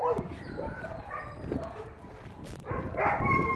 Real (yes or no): yes